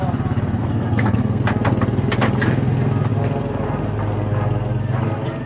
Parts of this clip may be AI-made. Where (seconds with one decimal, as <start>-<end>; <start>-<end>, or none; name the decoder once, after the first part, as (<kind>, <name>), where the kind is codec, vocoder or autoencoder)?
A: 0.6-1.4 (codec, SNAC)